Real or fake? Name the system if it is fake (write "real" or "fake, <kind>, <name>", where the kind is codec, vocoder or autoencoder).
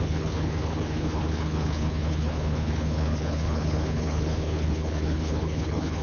fake, codec, HILCodec